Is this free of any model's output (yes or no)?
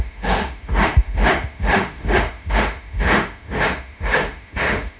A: no